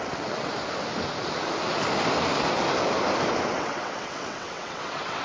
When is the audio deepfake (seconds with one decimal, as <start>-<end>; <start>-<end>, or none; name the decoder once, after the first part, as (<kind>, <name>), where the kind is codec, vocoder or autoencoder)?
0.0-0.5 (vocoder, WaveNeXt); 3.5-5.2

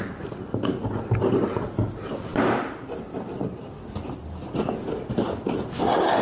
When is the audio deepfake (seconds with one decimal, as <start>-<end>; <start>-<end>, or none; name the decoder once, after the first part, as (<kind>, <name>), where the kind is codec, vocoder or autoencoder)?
none

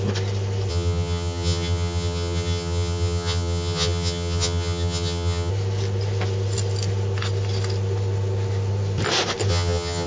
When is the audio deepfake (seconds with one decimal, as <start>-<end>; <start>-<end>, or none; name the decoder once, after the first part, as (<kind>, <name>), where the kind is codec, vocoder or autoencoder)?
0.7-5.5 (vocoder, HiFi-GAN); 9.5-10.1

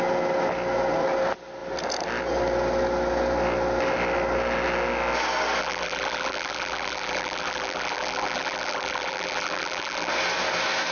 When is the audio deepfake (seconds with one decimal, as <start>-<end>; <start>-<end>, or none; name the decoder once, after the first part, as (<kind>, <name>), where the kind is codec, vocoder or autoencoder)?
5.6-10.1 (vocoder, BigVGAN v2)

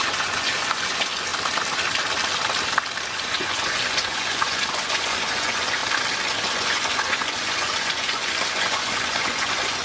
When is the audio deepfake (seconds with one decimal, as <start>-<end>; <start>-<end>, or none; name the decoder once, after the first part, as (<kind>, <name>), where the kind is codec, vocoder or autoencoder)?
0.0-1.3 (vocoder, Vocos); 3.1-5.8; 6.3-9.8

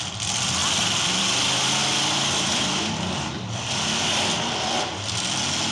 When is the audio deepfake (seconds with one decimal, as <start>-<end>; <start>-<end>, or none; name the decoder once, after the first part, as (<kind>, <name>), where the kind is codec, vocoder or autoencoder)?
0.6-1.2 (vocoder, BigVGAN v2)